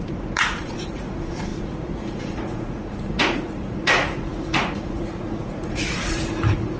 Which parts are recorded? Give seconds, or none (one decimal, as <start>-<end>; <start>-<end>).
none